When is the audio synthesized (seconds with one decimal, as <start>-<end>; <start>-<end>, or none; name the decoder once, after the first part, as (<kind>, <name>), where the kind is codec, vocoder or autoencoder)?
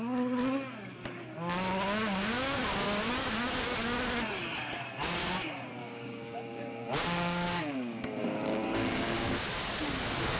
2.0-3.1 (codec, DAC); 5.8-9.4